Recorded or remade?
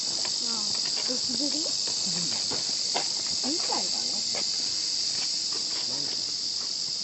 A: recorded